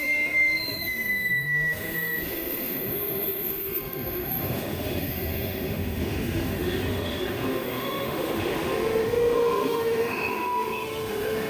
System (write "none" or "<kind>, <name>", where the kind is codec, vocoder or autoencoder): autoencoder, DAC-VAE